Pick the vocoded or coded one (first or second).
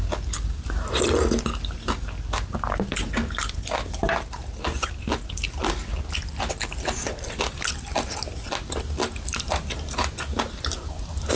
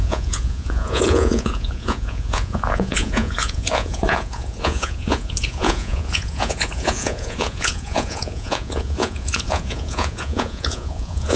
second